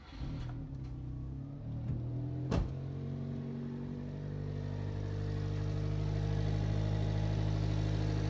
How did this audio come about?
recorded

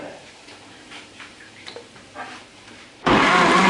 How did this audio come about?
remade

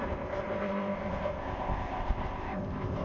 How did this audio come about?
remade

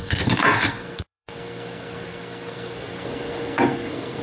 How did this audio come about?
remade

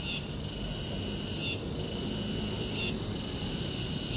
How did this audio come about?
recorded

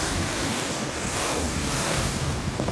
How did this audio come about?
remade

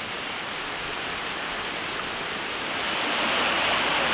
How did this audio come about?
recorded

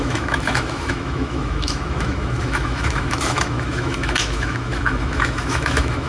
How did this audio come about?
remade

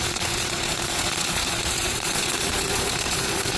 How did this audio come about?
remade